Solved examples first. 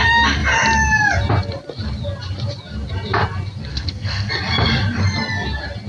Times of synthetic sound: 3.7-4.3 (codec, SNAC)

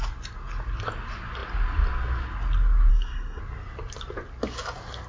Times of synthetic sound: 2.9-3.4 (codec, SNAC)

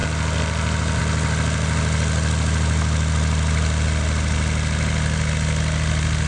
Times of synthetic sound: none

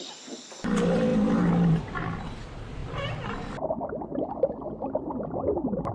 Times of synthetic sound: none

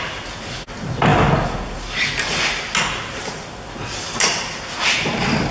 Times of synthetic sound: none

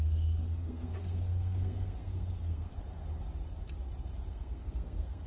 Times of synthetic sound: 0.0-2.7 (codec, SNAC); 4.3-5.3

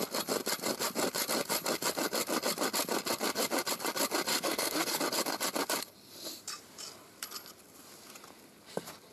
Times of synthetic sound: 4.3-5.0 (codec, SNAC)

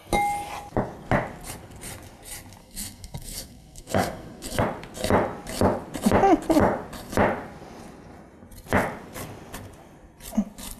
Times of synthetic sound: 2.6-4.6 (codec, SNAC)